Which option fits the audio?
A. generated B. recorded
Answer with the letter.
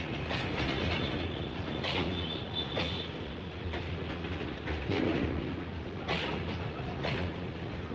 A